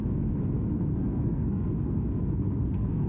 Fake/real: fake